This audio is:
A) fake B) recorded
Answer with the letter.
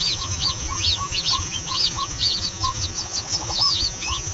A